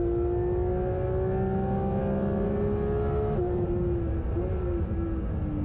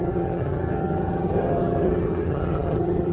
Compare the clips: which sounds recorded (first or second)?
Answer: first